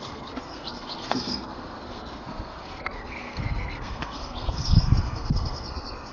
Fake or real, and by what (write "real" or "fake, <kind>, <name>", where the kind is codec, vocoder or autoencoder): fake, codec, SNAC